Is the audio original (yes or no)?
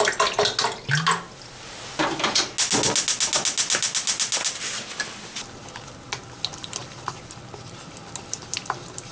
yes